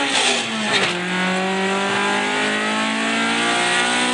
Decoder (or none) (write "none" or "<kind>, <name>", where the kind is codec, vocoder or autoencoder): none